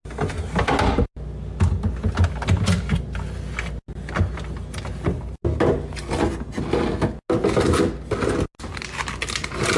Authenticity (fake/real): real